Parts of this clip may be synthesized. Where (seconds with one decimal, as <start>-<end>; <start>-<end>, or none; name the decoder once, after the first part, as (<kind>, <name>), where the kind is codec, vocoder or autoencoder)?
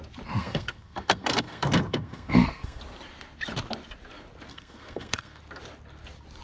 0.4-2.8 (codec, SNAC); 4.5-5.4